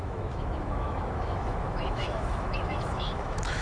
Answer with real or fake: fake